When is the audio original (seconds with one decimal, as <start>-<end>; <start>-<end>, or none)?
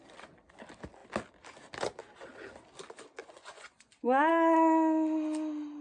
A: 0.0-3.2; 4.3-5.8